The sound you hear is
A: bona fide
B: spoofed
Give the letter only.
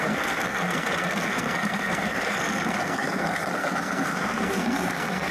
B